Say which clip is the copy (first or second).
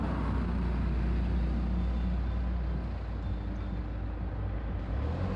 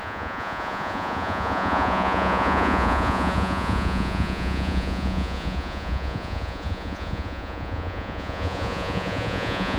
second